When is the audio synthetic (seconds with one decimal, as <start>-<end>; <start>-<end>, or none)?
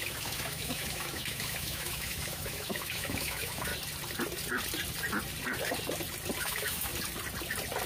0.0-3.7; 6.4-6.9